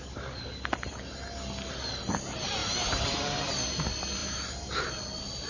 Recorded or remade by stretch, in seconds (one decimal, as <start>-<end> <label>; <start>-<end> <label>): 0.0-2.6 recorded; 2.6-3.6 remade; 3.6-4.2 recorded; 4.2-4.9 remade; 4.9-5.5 recorded